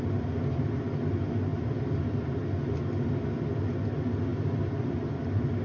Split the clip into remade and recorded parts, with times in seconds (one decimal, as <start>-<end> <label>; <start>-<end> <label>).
0.0-4.3 recorded; 4.3-4.9 remade; 4.9-5.6 recorded